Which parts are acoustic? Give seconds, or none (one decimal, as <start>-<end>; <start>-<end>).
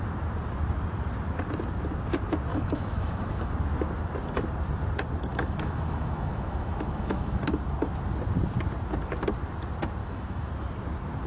0.0-2.5; 3.5-5.3; 7.4-10.0; 10.5-11.3